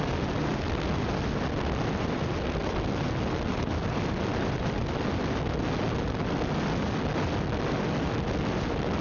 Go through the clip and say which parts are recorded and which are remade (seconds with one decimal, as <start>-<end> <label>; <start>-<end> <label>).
0.0-9.0 recorded